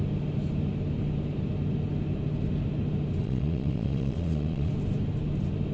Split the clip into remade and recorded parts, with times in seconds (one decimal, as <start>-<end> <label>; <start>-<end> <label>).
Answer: 0.0-3.2 recorded; 3.2-4.7 remade; 4.7-5.7 recorded